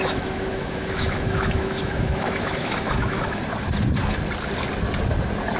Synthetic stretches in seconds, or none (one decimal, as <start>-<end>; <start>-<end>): 0.0-3.4